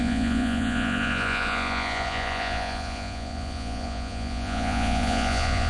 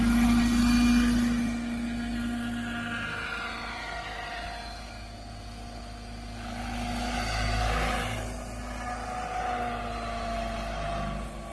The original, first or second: second